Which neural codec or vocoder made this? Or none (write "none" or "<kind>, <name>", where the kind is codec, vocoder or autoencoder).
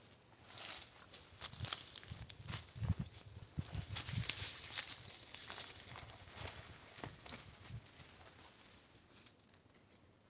none